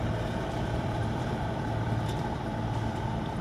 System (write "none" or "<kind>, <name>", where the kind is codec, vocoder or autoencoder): vocoder, BigVGAN v2